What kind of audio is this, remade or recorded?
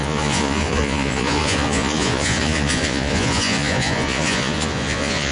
remade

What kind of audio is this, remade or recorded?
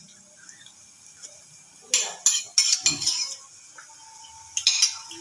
recorded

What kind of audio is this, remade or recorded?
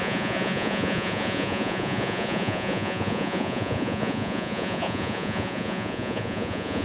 remade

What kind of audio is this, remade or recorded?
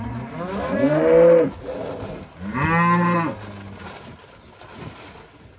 recorded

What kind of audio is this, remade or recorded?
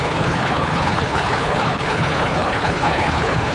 remade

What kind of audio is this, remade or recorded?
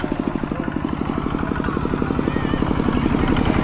recorded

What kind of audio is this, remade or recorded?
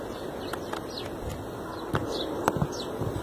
recorded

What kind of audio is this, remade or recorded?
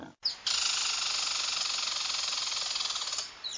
recorded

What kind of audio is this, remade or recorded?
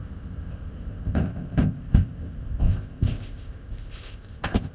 remade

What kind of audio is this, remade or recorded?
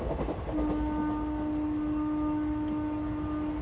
recorded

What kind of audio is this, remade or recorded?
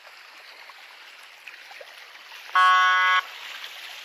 recorded